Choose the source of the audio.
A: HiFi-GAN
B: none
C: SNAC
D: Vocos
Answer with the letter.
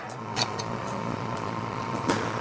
D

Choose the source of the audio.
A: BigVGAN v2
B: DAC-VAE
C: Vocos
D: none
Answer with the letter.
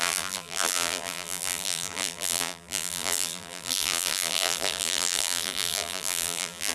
A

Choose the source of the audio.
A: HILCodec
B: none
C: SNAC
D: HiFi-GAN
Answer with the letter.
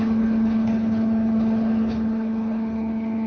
A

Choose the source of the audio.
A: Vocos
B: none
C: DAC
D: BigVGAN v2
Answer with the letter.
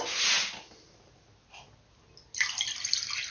B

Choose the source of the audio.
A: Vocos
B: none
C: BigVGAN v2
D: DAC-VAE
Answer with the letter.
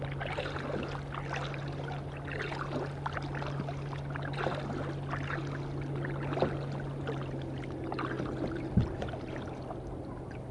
B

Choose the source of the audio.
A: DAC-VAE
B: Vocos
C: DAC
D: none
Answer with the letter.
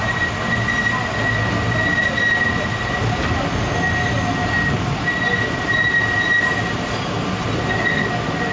D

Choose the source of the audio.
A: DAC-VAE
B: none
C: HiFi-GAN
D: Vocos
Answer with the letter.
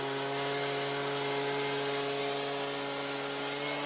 B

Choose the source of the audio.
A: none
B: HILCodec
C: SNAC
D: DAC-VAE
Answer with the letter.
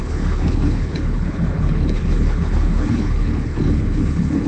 B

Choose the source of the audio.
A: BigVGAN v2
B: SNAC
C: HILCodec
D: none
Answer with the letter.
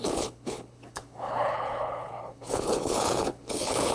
C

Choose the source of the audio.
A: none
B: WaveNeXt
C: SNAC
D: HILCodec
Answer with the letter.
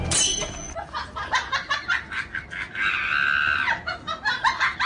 A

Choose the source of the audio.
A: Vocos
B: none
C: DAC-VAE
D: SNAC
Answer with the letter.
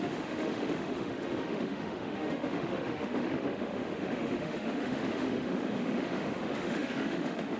C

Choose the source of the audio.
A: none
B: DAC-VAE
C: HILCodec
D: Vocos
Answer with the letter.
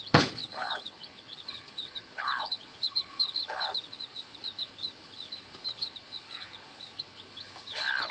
C